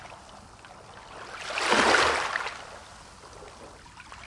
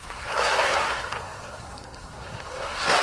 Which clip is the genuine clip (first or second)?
first